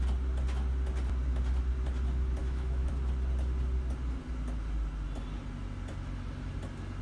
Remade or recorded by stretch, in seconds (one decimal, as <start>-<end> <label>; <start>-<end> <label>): 0.0-2.4 recorded; 2.4-2.9 remade; 2.9-7.0 recorded